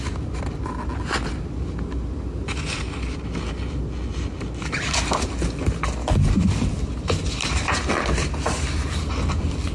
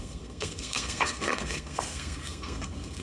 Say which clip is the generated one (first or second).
second